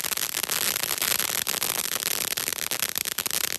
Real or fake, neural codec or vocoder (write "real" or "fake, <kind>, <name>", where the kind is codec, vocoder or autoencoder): real